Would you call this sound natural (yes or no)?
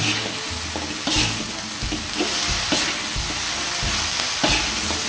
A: yes